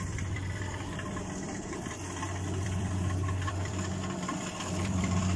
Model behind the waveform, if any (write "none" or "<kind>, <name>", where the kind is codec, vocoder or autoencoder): vocoder, BigVGAN v2